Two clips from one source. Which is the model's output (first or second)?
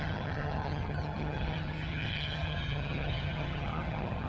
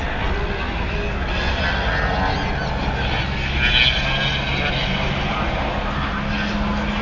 first